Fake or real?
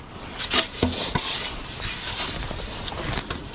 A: real